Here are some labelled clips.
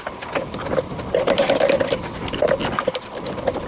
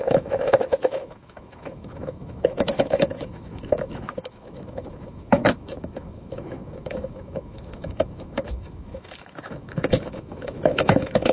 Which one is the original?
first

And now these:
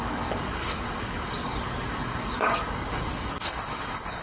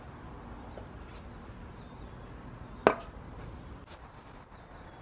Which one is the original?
second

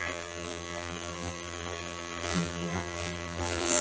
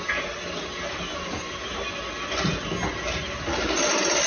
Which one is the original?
second